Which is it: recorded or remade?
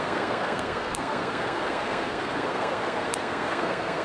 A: remade